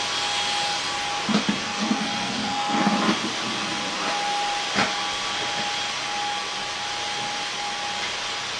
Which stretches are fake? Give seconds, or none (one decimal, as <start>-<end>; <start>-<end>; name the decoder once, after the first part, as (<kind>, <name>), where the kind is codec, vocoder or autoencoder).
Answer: 1.6-2.8 (codec, SNAC)